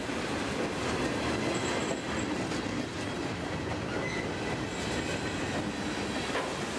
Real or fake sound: real